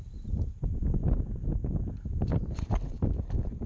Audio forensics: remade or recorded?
recorded